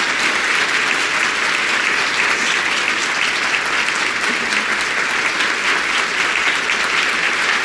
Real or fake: real